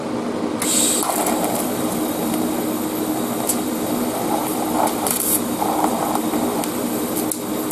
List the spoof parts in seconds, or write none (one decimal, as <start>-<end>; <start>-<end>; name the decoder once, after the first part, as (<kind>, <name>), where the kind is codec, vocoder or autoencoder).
none